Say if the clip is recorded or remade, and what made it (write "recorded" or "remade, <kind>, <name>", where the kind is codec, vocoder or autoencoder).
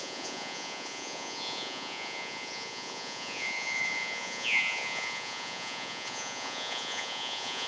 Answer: remade, vocoder, Vocos